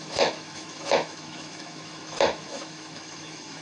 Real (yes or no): no